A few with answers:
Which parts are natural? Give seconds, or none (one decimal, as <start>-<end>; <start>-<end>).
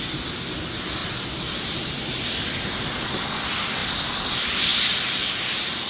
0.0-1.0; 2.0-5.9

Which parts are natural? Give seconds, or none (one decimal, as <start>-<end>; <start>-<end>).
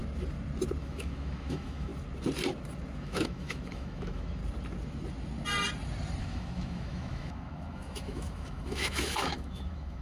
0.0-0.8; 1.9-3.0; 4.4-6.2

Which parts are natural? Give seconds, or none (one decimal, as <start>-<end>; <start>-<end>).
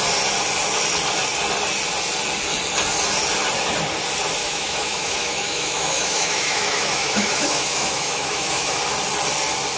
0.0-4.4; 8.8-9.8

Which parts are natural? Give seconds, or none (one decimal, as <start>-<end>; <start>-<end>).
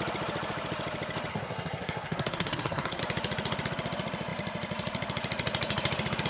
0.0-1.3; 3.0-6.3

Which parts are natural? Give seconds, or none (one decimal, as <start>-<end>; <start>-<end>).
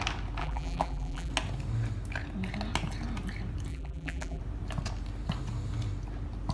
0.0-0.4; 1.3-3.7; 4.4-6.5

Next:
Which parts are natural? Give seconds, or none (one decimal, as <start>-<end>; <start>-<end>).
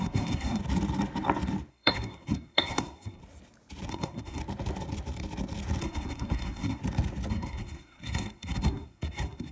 0.6-1.7; 3.2-3.9; 4.4-5.8; 6.8-7.3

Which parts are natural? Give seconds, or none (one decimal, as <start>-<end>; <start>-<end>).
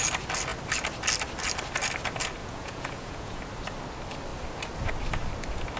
0.0-2.4; 3.4-5.8